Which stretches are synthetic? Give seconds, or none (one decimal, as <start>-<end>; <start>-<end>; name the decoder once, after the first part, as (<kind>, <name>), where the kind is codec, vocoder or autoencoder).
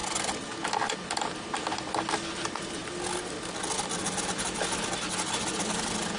none